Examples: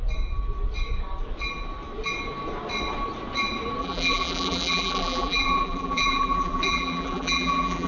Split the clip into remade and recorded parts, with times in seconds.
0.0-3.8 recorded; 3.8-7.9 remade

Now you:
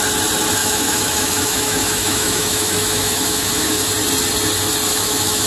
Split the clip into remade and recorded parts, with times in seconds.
0.0-0.6 recorded; 0.6-3.9 remade; 3.9-4.9 recorded; 4.9-5.5 remade

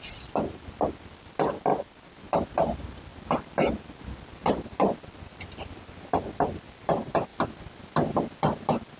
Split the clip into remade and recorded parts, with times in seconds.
0.0-9.0 recorded

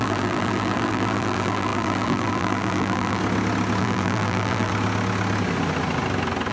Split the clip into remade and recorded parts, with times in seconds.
0.0-3.2 remade; 3.2-3.8 recorded; 3.8-4.7 remade; 4.7-6.5 recorded